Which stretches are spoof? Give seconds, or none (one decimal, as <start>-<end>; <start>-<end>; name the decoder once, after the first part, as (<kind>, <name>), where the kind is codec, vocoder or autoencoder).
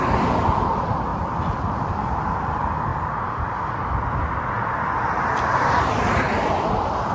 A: 0.0-1.1 (vocoder, BigVGAN v2); 1.7-2.9; 5.7-7.1